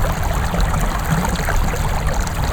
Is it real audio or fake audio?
real